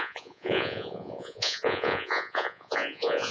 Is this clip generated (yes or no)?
yes